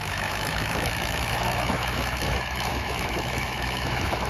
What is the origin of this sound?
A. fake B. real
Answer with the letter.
A